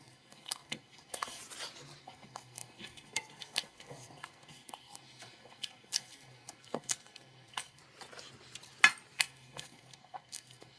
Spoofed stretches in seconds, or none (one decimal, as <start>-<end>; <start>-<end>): 0.0-1.4; 2.0-7.8; 9.2-10.8